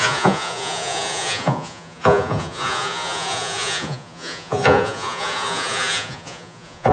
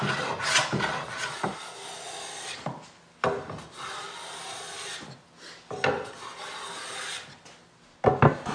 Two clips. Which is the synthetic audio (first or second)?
first